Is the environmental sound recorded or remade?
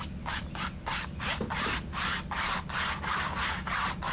recorded